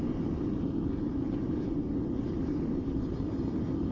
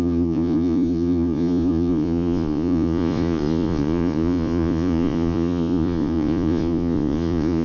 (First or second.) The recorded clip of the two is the first